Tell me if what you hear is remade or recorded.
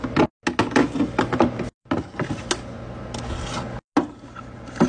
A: recorded